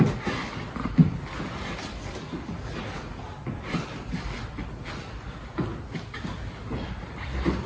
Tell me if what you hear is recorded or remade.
recorded